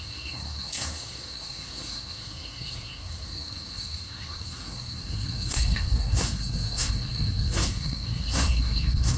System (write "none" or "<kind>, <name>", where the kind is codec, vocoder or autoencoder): codec, SNAC